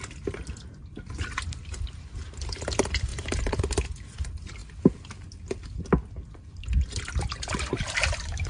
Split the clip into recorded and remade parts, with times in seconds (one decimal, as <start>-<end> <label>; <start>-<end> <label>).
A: 0.0-3.1 recorded; 3.1-3.6 remade; 3.6-8.5 recorded